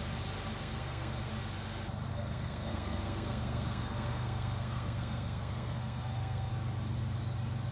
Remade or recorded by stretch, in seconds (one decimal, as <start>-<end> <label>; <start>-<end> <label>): 0.0-0.6 recorded; 0.6-1.3 remade; 1.3-2.1 recorded; 2.1-6.5 remade; 6.5-7.7 recorded